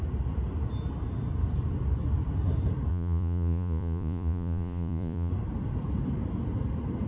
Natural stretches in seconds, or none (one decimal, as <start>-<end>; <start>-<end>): 0.0-2.9; 5.3-7.1